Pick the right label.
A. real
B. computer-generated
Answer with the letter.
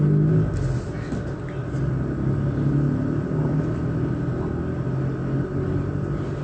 A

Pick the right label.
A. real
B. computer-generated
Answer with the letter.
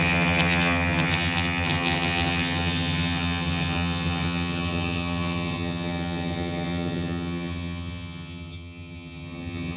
B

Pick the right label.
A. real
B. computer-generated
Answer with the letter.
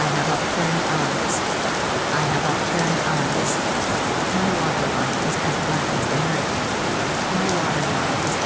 A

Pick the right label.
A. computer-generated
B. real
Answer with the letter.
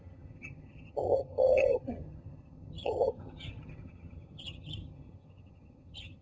A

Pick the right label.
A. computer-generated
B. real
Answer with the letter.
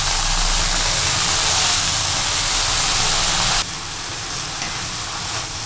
B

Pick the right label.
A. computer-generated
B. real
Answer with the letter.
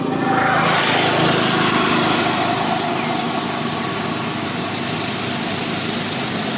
B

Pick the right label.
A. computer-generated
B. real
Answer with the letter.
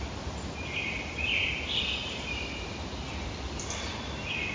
B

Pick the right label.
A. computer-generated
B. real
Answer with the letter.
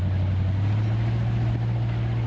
B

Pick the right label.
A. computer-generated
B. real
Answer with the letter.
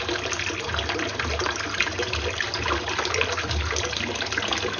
B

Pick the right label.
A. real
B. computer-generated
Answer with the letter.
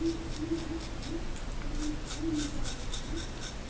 A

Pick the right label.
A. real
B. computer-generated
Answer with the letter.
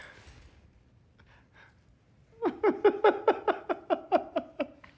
A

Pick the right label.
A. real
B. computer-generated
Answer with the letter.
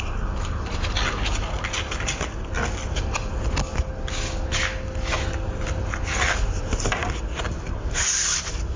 A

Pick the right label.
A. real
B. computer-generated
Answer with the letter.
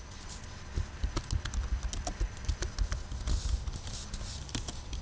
A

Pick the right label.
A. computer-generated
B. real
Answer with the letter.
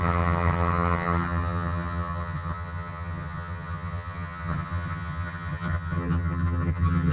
A